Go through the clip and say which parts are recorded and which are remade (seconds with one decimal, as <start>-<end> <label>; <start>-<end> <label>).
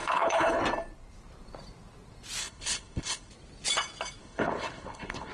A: 0.0-0.6 remade; 0.6-2.4 recorded; 2.4-3.3 remade; 3.3-4.2 recorded; 4.2-5.3 remade